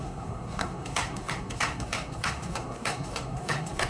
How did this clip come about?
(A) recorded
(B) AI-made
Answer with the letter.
B